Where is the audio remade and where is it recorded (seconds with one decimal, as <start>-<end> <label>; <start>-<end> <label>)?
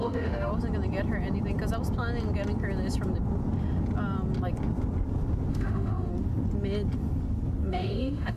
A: 0.0-0.5 remade; 0.5-5.5 recorded; 5.5-6.1 remade; 6.1-7.7 recorded; 7.7-8.4 remade